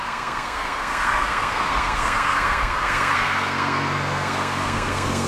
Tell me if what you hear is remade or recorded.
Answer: remade